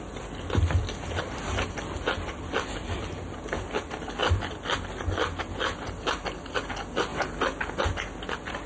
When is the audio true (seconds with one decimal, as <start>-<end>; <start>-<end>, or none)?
0.0-8.7